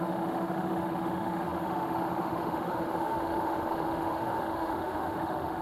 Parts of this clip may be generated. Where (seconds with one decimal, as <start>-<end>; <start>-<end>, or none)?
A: 0.0-5.6